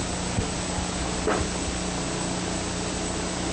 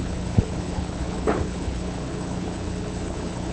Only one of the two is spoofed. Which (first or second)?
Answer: second